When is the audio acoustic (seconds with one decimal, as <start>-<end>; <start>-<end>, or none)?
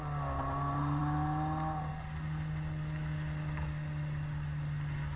0.0-5.2